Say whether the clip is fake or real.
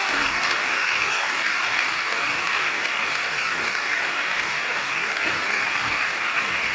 fake